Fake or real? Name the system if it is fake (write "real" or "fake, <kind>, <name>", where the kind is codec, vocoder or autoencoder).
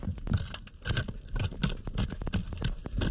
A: real